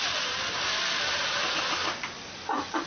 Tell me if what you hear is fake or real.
real